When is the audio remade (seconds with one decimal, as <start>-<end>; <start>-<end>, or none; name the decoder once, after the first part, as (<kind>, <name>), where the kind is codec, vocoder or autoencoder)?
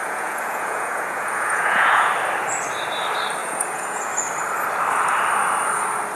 0.0-2.1 (vocoder, Vocos); 3.4-4.1